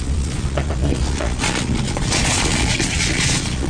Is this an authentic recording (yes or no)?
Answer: no